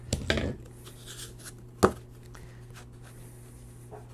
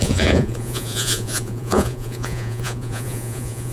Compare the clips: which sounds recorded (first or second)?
first